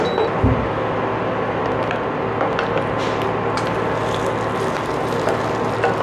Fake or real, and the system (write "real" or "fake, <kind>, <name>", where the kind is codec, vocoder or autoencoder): real